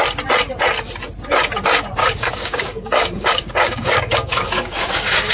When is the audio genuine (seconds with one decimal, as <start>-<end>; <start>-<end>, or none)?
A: 0.0-2.0